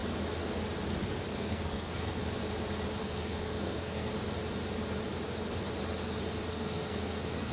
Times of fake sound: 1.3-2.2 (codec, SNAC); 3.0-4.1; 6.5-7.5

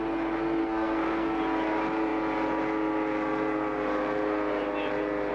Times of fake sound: 0.6-1.4 (codec, SNAC)

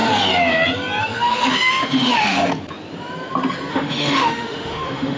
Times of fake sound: 1.0-2.4 (autoencoder, DAC-VAE); 3.7-5.2

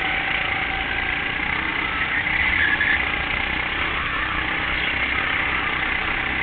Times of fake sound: none